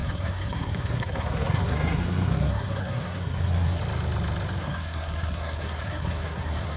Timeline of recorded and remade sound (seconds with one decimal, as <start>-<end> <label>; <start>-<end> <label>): 0.0-3.8 remade; 3.8-4.6 recorded; 4.6-6.8 remade